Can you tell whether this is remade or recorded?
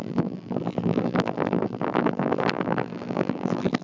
remade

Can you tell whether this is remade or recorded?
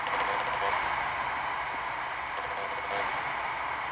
recorded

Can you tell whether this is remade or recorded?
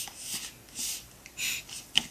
recorded